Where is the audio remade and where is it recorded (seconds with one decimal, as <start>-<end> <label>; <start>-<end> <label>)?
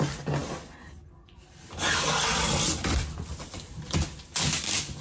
0.0-5.0 recorded